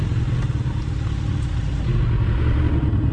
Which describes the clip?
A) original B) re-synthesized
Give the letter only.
A